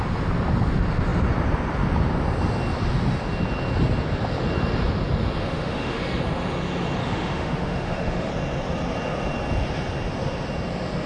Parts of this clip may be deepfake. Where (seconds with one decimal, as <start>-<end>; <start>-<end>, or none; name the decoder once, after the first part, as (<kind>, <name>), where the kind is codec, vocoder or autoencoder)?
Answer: 5.4-6.0 (autoencoder, DAC-VAE); 7.0-8.3